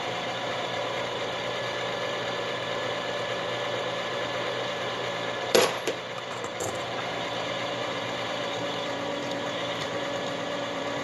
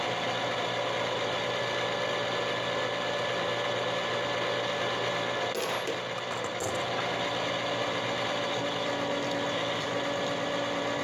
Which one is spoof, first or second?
first